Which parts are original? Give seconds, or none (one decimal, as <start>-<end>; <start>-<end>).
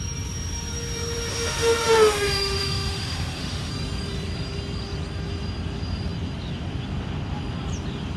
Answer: 0.0-1.3; 3.7-8.2